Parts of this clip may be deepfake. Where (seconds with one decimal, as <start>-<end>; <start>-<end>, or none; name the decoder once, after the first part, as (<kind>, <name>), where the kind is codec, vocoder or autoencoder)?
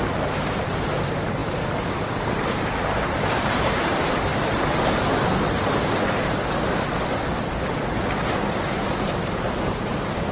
0.0-4.3 (vocoder, BigVGAN v2); 8.6-10.3